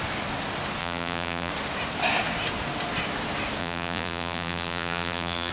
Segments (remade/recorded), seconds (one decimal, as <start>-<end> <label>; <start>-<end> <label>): 0.0-0.8 recorded; 0.8-1.5 remade; 1.5-3.6 recorded; 3.6-5.5 remade